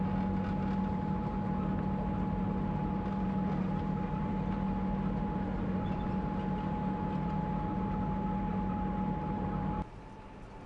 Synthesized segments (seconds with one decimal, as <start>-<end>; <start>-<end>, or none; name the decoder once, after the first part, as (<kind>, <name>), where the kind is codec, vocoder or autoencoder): none